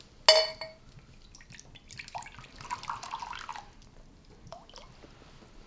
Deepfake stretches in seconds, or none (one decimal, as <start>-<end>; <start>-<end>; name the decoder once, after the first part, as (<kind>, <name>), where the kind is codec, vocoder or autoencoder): none